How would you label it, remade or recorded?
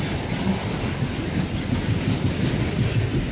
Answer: recorded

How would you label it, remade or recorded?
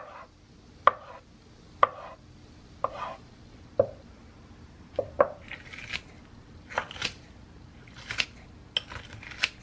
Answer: recorded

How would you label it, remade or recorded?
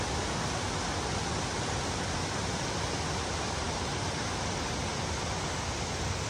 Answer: recorded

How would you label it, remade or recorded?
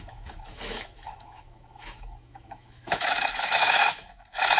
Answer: remade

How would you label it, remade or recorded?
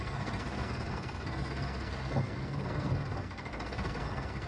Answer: remade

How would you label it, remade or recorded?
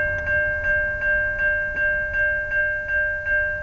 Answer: recorded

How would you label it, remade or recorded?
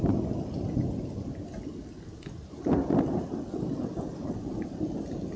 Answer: recorded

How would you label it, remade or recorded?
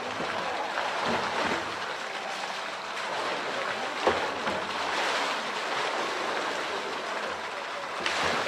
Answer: recorded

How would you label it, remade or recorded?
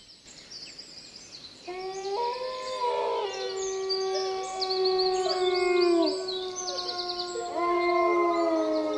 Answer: recorded